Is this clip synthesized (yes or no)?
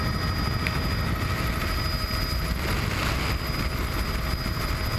no